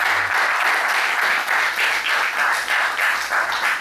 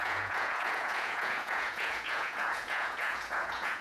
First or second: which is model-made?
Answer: second